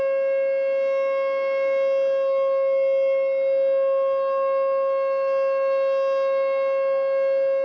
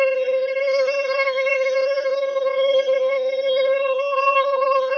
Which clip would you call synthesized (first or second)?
second